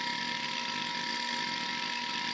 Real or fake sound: real